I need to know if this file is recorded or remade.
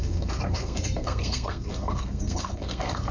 remade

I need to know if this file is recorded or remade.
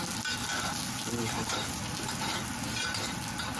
recorded